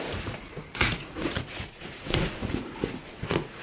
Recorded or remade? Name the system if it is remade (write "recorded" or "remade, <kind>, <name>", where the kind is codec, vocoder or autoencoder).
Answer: remade, vocoder, Vocos